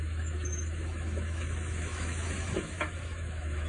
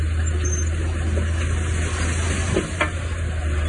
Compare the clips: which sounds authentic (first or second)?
second